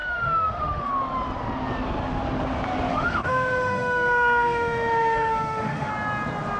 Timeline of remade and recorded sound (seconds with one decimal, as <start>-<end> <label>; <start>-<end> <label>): 0.0-0.9 remade; 0.9-2.9 recorded; 2.9-5.9 remade; 5.9-6.6 recorded